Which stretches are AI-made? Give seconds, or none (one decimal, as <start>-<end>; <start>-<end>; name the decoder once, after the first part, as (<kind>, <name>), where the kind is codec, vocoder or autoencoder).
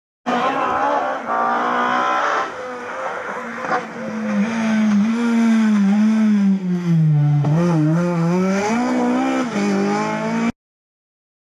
2.2-3.4 (autoencoder, DAC-VAE); 5.1-8.7